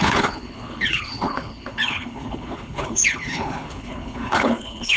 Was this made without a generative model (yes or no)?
no